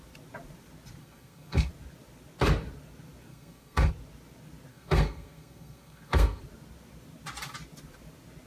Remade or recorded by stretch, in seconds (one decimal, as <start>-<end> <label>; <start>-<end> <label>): 0.0-1.0 recorded; 1.0-1.7 remade; 1.7-3.3 recorded; 3.3-3.9 remade; 3.9-4.7 recorded; 4.7-6.4 remade; 6.4-8.5 recorded